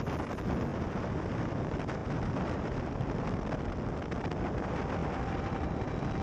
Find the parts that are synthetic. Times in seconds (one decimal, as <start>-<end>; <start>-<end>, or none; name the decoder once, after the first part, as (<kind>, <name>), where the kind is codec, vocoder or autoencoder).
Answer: none